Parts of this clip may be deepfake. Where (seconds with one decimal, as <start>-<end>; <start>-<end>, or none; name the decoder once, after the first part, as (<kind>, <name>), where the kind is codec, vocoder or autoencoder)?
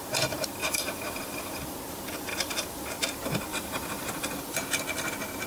0.6-1.8 (vocoder, BigVGAN v2); 2.3-2.9; 3.5-4.8